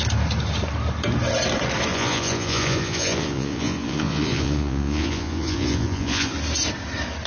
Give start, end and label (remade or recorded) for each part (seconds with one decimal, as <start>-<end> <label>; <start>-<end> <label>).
0.0-1.9 recorded; 1.9-6.3 remade; 6.3-7.3 recorded